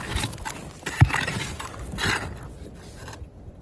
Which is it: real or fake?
real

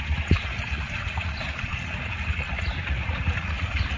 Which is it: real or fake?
fake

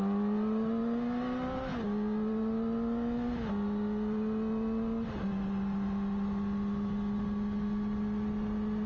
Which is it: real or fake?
real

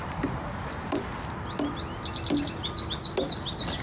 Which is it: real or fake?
real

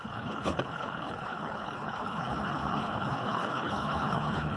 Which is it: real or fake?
fake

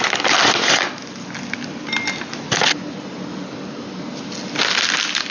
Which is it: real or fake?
real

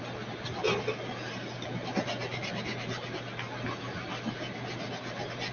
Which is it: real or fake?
real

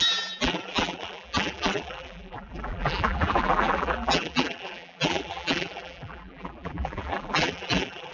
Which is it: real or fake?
fake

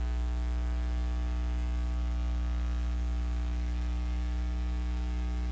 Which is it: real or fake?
fake